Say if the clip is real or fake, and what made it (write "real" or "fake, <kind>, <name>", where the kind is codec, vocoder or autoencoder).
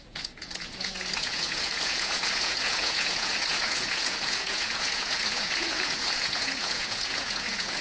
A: fake, vocoder, Vocos